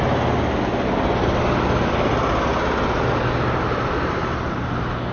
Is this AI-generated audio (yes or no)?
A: no